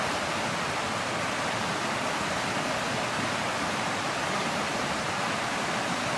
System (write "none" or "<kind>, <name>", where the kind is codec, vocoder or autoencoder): none